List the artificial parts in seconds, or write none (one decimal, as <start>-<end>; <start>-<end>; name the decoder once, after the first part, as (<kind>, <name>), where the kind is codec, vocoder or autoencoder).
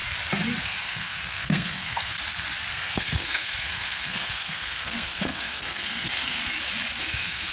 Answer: 0.6-2.1 (codec, SNAC); 2.7-6.4; 7.0-7.5